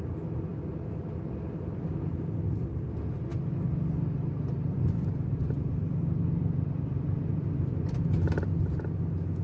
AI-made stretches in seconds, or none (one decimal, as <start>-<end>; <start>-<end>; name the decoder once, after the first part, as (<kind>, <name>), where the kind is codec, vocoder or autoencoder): 0.5-1.0 (vocoder, BigVGAN v2); 3.3-8.1